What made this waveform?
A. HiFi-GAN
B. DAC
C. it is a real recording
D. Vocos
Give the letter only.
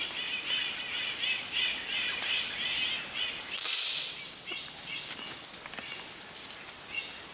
C